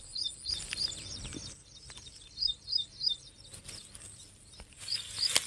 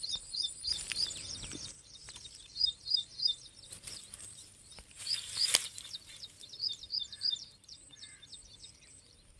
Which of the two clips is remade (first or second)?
second